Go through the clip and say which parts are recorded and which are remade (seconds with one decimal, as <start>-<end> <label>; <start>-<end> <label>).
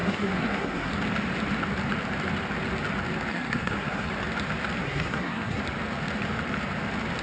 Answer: 0.0-0.9 remade; 0.9-3.3 recorded; 3.3-4.1 remade; 4.1-4.8 recorded; 4.8-5.6 remade; 5.6-7.2 recorded